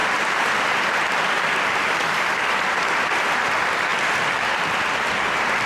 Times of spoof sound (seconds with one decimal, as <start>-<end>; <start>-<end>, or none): 0.0-5.7